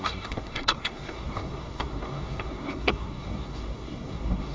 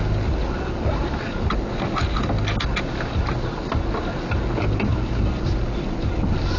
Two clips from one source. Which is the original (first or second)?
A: second